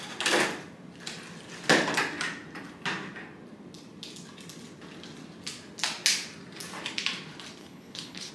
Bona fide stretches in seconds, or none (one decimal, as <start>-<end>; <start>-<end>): 0.0-7.6